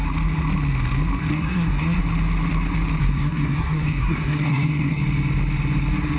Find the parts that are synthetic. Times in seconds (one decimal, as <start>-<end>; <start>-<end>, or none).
1.3-2.0; 3.0-5.0